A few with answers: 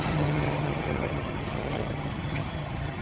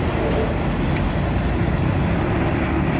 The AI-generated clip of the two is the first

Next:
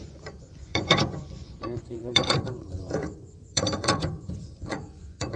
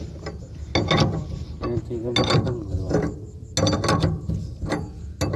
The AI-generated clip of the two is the first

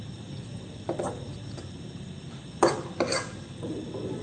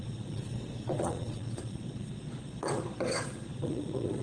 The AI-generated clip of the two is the second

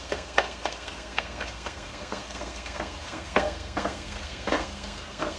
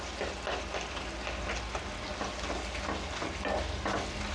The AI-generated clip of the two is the first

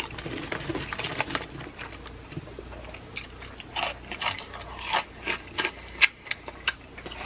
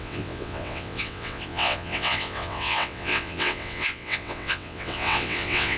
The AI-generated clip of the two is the second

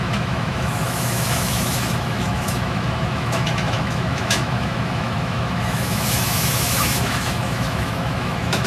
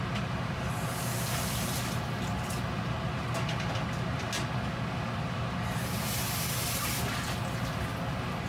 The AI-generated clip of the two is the first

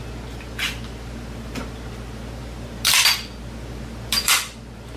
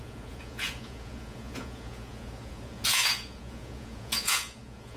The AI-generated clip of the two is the second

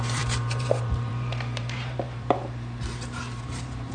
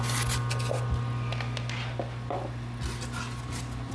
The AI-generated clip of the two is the first